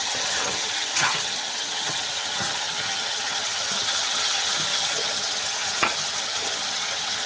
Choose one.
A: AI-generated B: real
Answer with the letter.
A